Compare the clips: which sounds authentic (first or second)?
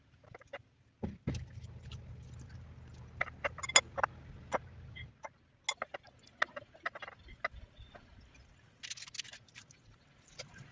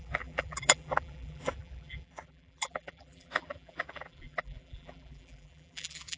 first